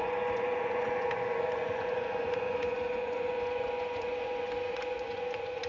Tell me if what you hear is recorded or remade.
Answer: remade